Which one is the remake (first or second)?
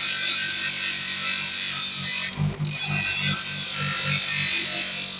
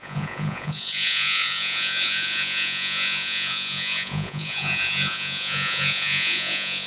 second